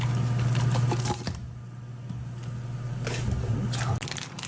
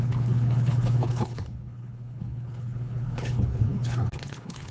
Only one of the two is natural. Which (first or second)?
first